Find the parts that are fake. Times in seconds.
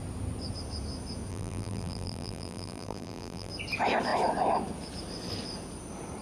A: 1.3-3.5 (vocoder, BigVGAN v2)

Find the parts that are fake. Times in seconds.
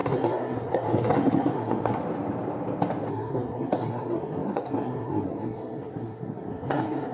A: 0.0-2.0 (codec, SNAC); 3.1-7.1